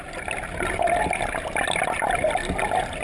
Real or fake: real